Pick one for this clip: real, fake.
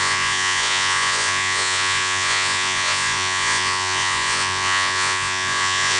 fake